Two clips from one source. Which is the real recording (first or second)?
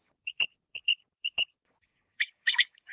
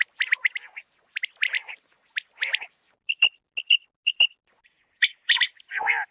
second